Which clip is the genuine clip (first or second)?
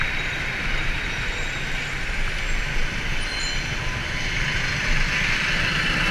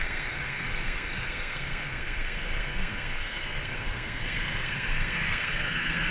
first